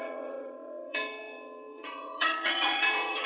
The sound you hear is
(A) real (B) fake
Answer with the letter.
B